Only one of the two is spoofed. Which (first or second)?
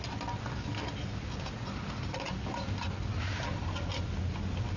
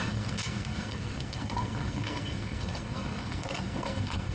second